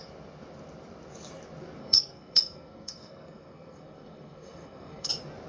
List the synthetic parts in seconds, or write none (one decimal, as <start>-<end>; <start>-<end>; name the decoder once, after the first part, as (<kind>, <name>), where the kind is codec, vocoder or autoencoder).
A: 1.8-5.1 (codec, SNAC)